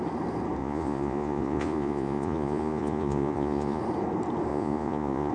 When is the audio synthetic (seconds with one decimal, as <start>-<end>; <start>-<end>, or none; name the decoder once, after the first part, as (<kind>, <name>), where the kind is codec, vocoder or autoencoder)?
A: 0.6-3.8 (vocoder, Vocos); 4.5-5.3